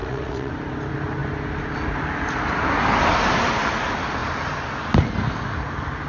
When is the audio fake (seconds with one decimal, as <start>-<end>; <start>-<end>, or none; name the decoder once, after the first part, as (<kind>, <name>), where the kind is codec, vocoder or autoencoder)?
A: 0.0-0.5 (vocoder, WaveNeXt)